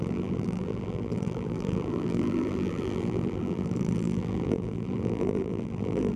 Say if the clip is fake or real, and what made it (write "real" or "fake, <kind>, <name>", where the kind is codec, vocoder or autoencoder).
fake, vocoder, BigVGAN v2